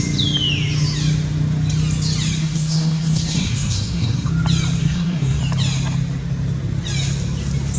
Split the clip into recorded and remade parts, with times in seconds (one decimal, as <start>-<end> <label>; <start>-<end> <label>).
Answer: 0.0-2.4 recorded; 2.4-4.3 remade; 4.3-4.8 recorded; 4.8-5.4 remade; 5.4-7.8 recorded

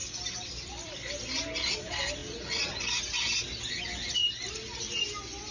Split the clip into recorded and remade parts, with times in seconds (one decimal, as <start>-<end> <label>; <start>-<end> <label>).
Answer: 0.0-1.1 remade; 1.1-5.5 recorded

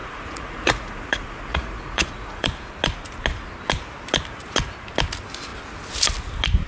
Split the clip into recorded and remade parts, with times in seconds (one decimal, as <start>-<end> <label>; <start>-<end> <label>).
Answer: 0.0-2.5 remade; 2.5-6.7 recorded

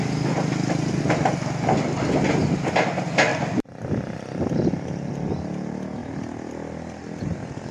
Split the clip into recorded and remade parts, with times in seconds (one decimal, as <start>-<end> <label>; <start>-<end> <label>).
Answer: 0.0-1.0 remade; 1.0-3.3 recorded; 3.3-5.1 remade; 5.1-7.7 recorded

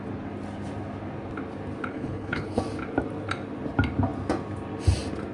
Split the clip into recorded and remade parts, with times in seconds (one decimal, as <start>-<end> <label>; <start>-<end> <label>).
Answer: 0.0-1.9 recorded; 1.9-2.6 remade; 2.6-5.3 recorded